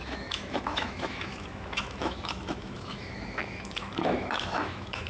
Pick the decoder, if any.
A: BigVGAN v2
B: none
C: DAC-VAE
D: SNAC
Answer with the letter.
C